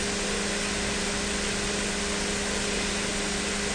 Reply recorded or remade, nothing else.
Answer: recorded